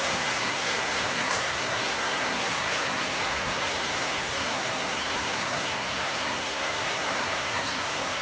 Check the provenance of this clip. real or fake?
fake